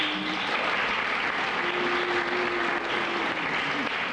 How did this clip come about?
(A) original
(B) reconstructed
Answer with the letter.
A